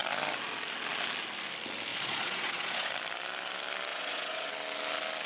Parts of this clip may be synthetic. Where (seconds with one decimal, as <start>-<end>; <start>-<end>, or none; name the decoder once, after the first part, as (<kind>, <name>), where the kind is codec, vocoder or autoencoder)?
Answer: 1.9-2.9 (vocoder, Vocos); 3.9-4.5